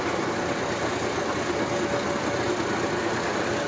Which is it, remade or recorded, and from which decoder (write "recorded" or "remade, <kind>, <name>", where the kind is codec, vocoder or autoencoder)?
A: recorded